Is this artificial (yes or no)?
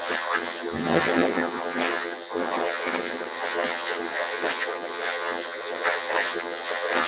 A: yes